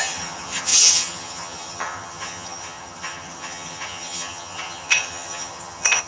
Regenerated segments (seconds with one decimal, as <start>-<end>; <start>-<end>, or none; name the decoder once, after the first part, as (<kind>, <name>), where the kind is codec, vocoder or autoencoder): 0.0-6.1 (vocoder, HiFi-GAN)